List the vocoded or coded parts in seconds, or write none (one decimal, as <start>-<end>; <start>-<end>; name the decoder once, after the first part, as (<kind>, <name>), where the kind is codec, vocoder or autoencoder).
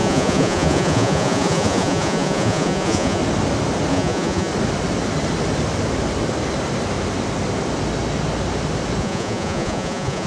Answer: 0.0-3.2 (vocoder, Vocos); 3.9-4.5; 9.0-10.3